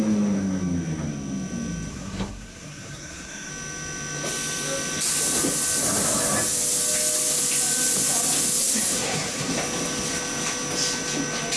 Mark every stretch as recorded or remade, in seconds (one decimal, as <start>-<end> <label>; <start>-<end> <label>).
0.0-1.9 recorded; 1.9-3.5 remade; 3.5-8.6 recorded; 8.6-9.5 remade; 9.5-11.6 recorded